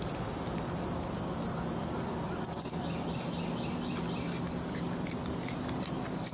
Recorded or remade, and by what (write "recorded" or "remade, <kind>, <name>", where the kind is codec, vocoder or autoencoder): recorded